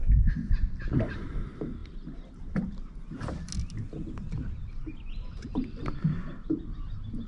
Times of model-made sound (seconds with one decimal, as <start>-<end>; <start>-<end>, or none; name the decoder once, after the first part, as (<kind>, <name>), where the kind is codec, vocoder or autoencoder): 0.0-0.5 (autoencoder, DAC-VAE)